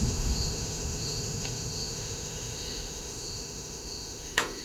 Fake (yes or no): yes